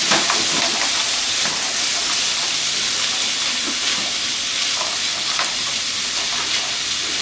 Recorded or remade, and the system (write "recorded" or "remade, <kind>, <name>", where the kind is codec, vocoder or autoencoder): recorded